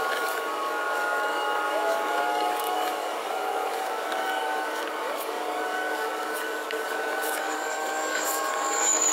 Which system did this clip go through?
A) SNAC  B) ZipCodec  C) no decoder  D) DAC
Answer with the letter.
D